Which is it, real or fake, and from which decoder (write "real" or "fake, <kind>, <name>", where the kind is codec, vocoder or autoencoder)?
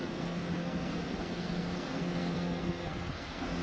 fake, codec, SNAC